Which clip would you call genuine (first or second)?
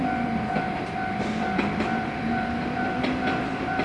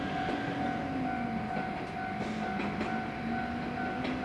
second